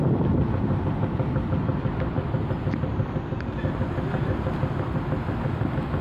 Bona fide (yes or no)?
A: yes